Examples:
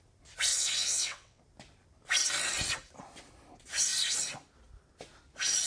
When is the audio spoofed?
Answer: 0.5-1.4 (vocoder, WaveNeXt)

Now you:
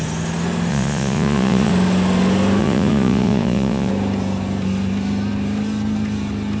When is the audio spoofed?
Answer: 0.7-1.7 (vocoder, Vocos); 2.6-3.9

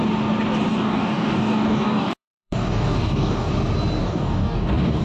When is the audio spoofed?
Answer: 0.7-3.5 (codec, DAC); 4.0-5.0

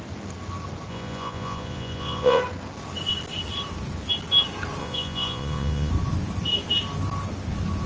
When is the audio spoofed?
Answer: 0.9-2.4 (vocoder, Vocos); 4.8-5.9

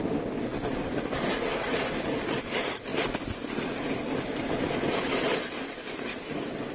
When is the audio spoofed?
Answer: none

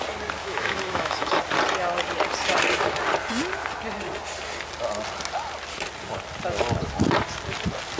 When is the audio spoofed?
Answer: 0.4-1.4 (autoencoder, DAC-VAE)

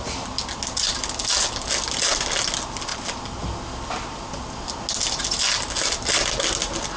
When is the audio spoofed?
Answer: none

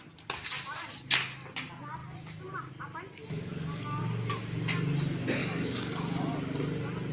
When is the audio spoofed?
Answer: 3.2-4.0 (codec, DAC); 5.4-6.3